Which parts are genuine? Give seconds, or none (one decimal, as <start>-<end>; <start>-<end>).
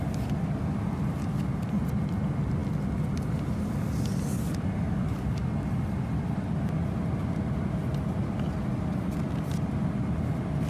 0.0-10.7